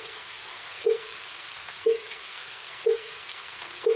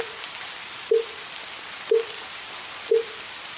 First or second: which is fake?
first